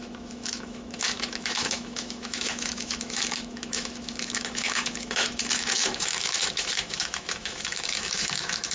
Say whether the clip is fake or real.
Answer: fake